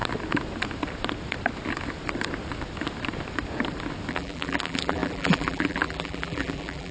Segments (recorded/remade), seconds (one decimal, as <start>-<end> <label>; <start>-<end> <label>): 0.0-4.1 recorded; 4.1-6.9 remade